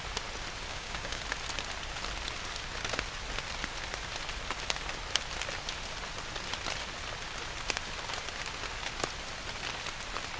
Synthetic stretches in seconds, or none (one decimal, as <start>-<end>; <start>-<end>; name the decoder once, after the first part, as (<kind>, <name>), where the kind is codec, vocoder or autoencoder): 0.7-1.2 (codec, DAC)